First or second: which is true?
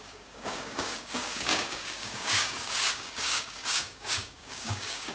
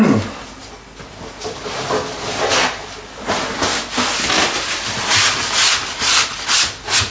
second